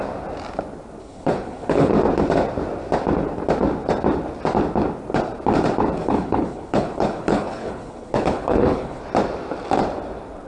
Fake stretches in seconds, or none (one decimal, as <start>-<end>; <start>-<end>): 1.0-1.9; 6.0-9.0